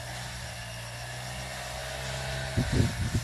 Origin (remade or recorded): recorded